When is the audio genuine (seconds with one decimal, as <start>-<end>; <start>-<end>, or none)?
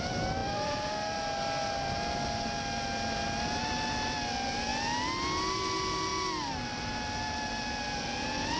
0.0-8.6